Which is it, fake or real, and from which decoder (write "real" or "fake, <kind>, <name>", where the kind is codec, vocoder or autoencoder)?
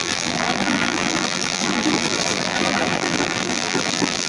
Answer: fake, vocoder, BigVGAN v2